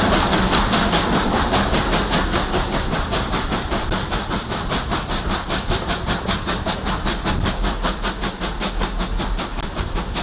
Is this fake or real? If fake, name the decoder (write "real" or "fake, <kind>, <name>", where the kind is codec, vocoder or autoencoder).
fake, vocoder, BigVGAN v2